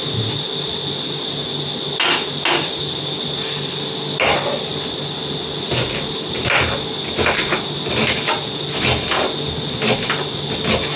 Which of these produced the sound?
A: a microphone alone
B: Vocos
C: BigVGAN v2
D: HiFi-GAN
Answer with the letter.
A